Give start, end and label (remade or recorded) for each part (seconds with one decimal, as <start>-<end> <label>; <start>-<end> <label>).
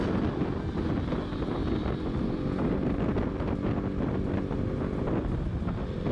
0.0-6.1 recorded